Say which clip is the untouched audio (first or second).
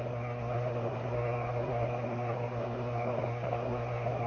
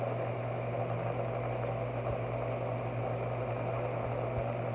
second